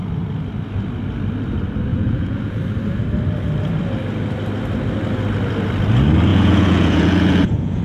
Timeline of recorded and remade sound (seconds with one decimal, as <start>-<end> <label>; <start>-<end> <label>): 0.0-1.9 recorded; 1.9-2.6 remade; 2.6-6.3 recorded; 6.3-7.8 remade

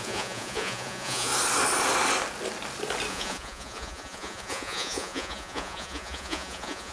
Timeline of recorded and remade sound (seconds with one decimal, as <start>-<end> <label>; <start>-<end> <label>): 0.0-1.3 remade; 1.3-3.1 recorded; 3.1-6.9 remade

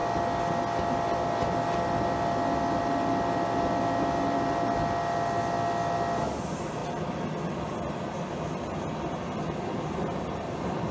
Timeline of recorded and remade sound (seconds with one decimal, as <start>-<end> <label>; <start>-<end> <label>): 0.0-10.9 recorded

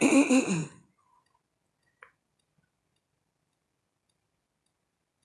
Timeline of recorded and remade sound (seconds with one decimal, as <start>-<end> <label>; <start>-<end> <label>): 0.0-0.6 recorded; 0.6-1.2 remade; 1.2-5.2 recorded

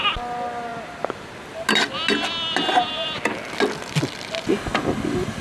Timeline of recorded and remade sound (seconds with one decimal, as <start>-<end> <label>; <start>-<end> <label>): 0.0-5.4 recorded

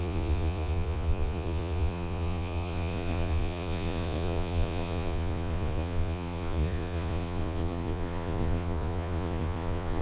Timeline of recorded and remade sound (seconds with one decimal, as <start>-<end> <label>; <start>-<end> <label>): 0.0-10.0 remade

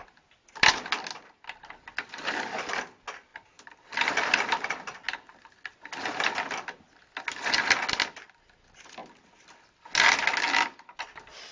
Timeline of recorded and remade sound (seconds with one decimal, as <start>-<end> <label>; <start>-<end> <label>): 0.0-11.5 recorded

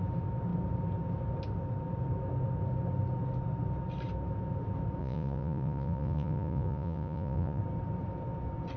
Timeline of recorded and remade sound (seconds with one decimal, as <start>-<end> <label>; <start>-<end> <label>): 0.0-5.0 recorded; 5.0-7.6 remade; 7.6-8.8 recorded